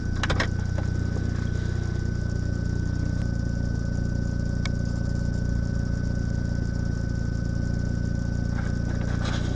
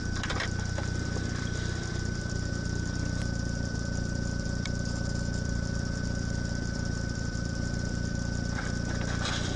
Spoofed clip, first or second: second